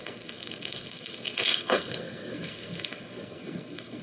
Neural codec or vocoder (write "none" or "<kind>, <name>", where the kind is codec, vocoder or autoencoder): codec, SNAC